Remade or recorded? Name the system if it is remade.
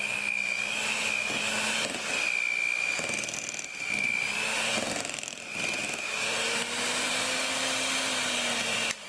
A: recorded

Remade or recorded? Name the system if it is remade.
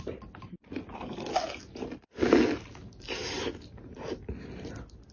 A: recorded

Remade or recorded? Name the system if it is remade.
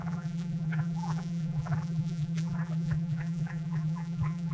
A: remade, vocoder, BigVGAN v2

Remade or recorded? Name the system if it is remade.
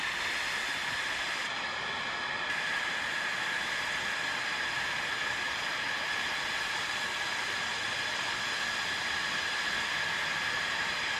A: recorded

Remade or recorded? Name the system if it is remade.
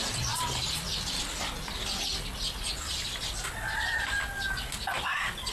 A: recorded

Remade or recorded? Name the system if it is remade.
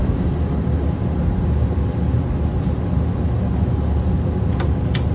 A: recorded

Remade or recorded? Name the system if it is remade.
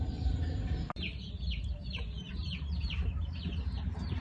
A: remade, vocoder, BigVGAN v2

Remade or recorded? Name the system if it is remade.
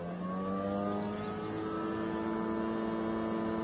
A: recorded